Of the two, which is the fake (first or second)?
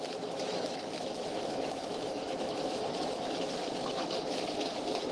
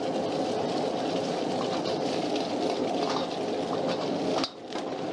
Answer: first